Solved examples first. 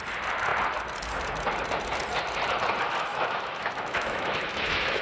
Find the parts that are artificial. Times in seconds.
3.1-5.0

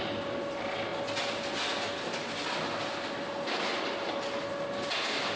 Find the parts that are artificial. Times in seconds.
none